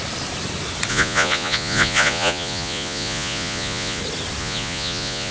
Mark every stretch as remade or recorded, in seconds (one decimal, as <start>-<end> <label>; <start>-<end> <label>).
0.0-0.9 recorded; 0.9-4.0 remade; 4.0-4.4 recorded; 4.4-5.3 remade